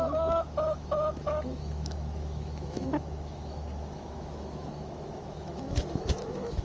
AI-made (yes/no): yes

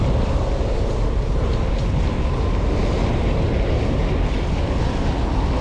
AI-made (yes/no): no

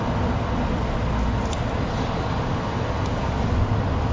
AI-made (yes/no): no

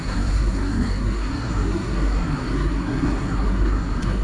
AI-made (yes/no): yes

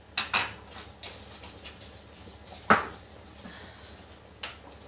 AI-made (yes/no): no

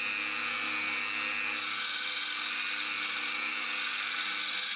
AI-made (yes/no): no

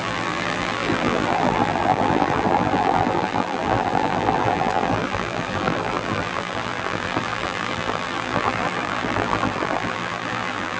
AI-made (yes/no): yes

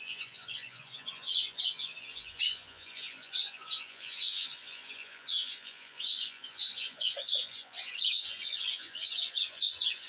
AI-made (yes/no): yes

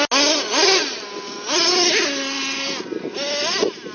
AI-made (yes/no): no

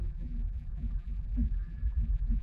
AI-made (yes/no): yes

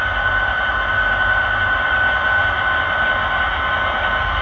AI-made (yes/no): no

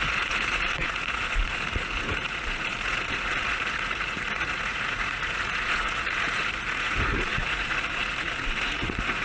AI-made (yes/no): yes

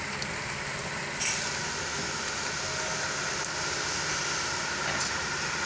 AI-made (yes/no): no